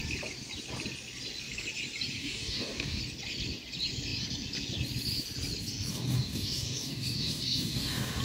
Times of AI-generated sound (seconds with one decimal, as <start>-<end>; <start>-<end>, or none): 2.2-3.0; 5.9-8.2